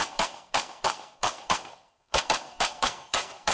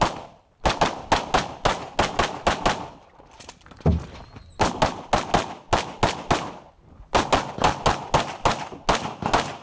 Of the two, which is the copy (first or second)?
first